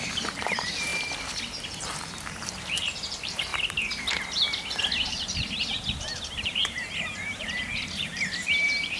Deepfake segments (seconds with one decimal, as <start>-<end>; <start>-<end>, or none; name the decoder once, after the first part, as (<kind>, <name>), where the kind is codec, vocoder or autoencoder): 0.0-0.9 (vocoder, BigVGAN v2); 1.6-3.5; 5.1-9.0